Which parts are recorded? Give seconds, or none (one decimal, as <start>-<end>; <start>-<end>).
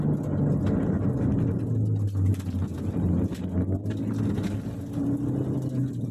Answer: 0.0-6.1